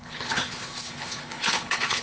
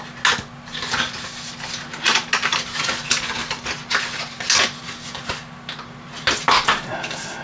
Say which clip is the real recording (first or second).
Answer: second